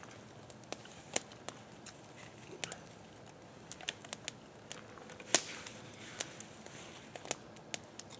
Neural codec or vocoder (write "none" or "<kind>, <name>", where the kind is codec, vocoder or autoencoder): none